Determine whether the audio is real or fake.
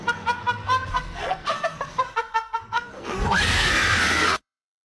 fake